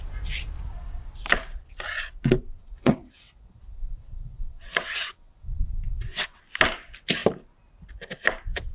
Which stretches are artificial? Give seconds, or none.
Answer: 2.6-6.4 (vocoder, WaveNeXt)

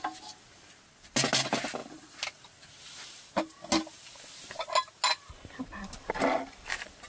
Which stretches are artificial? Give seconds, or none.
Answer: none

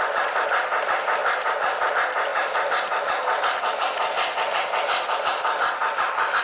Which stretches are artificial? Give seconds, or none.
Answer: none

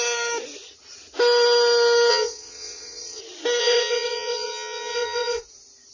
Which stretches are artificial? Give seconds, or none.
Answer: 2.1-3.2 (vocoder, WaveNeXt); 3.6-5.4

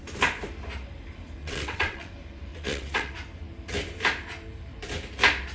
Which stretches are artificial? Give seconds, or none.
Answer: 1.4-2.1 (vocoder, WaveNeXt); 2.5-3.1

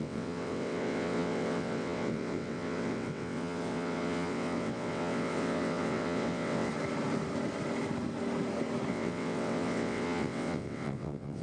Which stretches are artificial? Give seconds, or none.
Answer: 0.0-6.7 (vocoder, WaveNeXt); 8.9-11.4

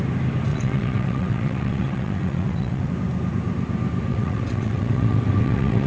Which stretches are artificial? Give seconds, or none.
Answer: 0.5-2.9 (vocoder, WaveNeXt); 4.1-5.9

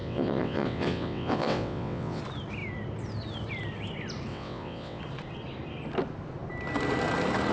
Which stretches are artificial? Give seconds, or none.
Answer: 0.0-2.2 (vocoder, WaveNeXt); 4.3-5.0